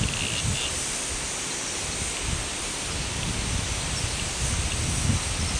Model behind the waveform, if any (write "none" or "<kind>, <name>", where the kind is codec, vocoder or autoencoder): none